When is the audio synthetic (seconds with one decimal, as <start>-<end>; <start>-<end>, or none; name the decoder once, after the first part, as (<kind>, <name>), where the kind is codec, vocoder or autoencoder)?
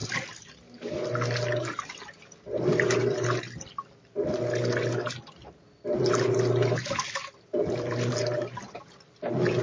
none